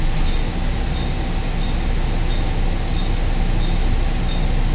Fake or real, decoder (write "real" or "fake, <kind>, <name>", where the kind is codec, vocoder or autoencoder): real